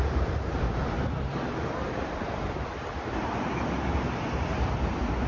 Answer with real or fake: fake